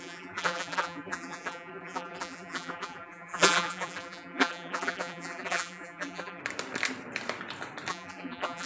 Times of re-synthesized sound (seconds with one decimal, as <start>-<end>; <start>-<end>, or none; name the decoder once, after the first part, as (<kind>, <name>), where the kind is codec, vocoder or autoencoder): 0.0-6.4 (vocoder, BigVGAN v2); 7.9-8.7

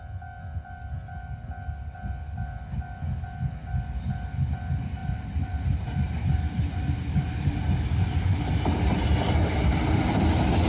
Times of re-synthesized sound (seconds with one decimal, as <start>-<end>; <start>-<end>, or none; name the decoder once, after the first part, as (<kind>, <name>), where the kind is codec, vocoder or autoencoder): 5.0-7.5 (vocoder, BigVGAN v2)

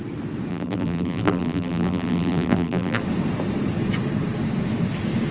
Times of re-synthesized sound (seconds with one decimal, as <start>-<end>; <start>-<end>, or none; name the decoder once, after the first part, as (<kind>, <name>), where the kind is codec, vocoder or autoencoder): 0.5-3.0 (vocoder, BigVGAN v2)

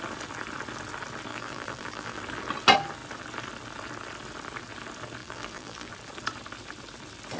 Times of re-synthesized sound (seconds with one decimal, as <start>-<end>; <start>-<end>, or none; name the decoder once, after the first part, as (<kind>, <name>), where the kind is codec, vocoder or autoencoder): 1.3-2.2 (vocoder, BigVGAN v2); 5.2-5.9

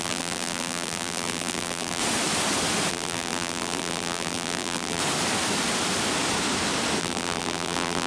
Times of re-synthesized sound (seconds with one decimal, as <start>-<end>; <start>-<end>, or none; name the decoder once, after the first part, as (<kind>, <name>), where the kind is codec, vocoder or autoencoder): 0.0-2.0 (vocoder, BigVGAN v2); 2.9-5.0; 7.0-8.1

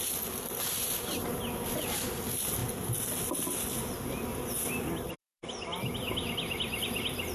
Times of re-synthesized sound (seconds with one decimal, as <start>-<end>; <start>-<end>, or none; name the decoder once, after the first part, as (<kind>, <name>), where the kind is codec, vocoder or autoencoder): 0.0-2.6 (vocoder, BigVGAN v2); 4.7-5.7; 6.3-7.3

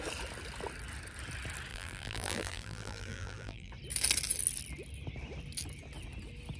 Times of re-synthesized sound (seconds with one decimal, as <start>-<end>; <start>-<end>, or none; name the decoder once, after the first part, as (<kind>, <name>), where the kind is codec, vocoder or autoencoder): 1.7-3.7 (vocoder, BigVGAN v2)

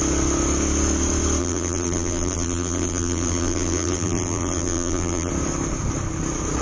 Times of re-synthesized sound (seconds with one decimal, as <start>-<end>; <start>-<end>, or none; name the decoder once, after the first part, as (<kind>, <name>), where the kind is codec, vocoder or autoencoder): 1.4-5.3 (vocoder, BigVGAN v2)